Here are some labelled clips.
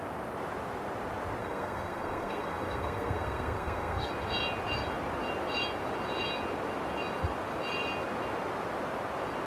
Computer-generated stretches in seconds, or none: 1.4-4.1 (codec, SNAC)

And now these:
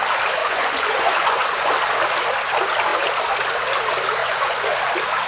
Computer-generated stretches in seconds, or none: 0.4-1.7 (vocoder, Vocos); 4.2-4.8

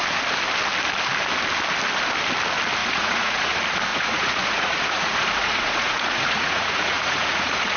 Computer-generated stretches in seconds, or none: 2.8-3.5 (vocoder, Vocos); 3.9-7.8

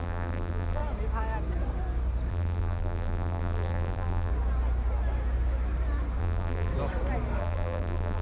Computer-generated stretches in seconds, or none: 0.0-0.8 (vocoder, BigVGAN v2); 2.3-4.3; 6.2-6.7; 7.4-8.2